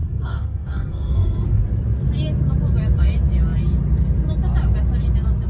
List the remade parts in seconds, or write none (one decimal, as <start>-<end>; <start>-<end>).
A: 0.0-1.6